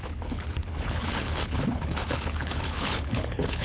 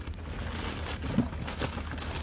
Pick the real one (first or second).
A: second